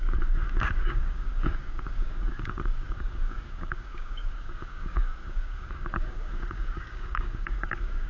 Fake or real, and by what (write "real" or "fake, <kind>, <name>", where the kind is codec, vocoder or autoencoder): fake, codec, DAC